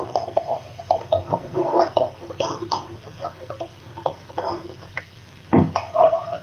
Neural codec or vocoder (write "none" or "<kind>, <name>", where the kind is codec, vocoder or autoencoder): codec, SNAC